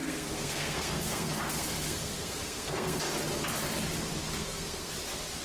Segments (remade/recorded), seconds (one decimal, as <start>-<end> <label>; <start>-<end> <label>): 0.0-3.0 remade; 3.0-4.3 recorded; 4.3-4.9 remade; 4.9-5.4 recorded

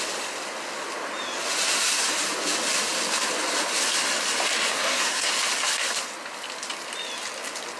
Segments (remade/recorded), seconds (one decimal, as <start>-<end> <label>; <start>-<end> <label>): 0.0-4.7 recorded; 4.7-5.3 remade; 5.3-7.8 recorded

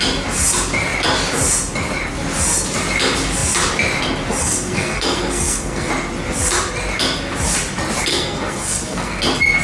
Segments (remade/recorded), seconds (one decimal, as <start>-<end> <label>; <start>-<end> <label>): 0.0-4.4 recorded; 4.4-5.9 remade; 5.9-8.1 recorded; 8.1-9.2 remade; 9.2-9.6 recorded

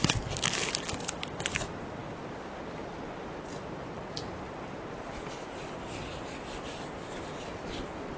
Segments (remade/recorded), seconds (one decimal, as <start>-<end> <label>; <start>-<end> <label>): 0.0-8.2 recorded

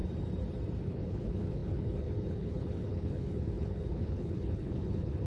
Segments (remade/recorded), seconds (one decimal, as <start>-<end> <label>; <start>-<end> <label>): 0.0-0.8 recorded; 0.8-5.3 remade